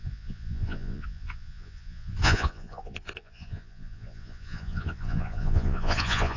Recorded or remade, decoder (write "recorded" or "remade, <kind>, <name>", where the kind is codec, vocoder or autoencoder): remade, vocoder, Vocos